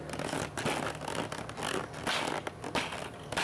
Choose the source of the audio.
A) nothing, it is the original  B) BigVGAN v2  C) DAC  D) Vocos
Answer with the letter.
A